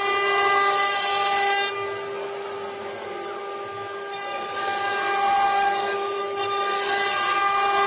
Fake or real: real